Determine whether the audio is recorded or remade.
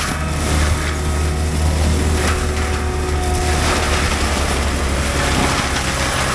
recorded